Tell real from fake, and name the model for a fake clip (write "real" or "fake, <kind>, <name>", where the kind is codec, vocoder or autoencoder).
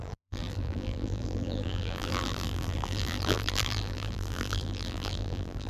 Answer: fake, vocoder, BigVGAN v2